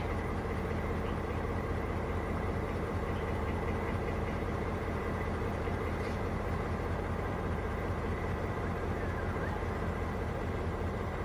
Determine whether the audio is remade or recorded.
remade